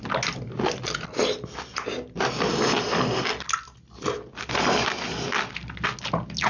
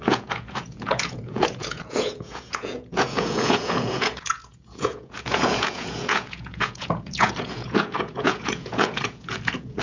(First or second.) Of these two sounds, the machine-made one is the second